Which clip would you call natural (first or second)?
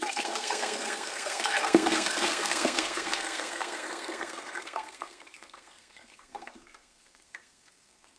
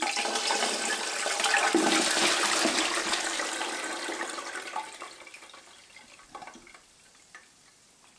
second